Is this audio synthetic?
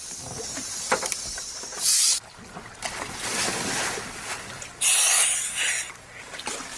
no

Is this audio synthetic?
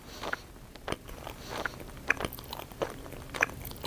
no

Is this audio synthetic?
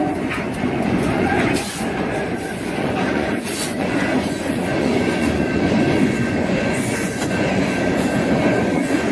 yes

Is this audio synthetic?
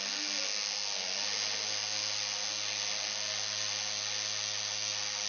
no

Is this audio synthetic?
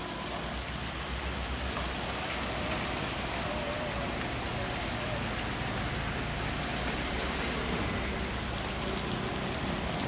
no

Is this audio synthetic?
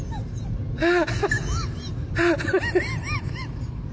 no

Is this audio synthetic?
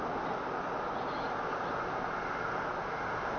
no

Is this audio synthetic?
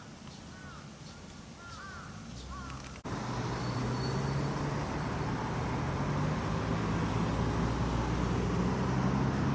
no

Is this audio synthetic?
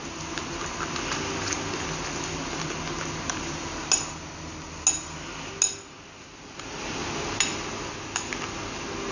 no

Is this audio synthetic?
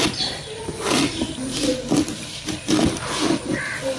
no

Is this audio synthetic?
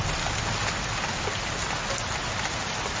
no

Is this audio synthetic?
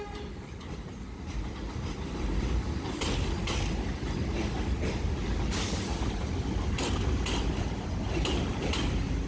no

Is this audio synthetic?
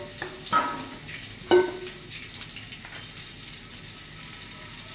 no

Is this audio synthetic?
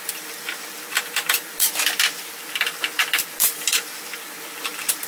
yes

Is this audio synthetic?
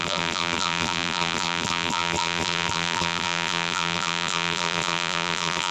yes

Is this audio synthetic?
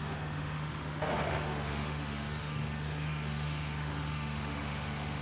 yes